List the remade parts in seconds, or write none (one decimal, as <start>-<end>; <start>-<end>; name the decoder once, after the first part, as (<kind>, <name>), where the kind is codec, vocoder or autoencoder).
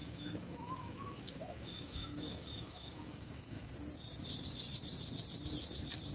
0.0-3.7 (autoencoder, DAC-VAE)